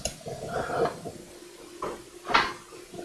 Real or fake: real